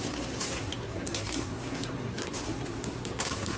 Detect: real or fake fake